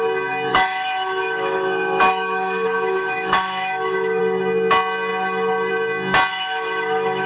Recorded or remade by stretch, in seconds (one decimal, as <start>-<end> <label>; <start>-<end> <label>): 0.0-0.5 recorded; 0.5-4.2 remade; 4.2-6.3 recorded; 6.3-7.3 remade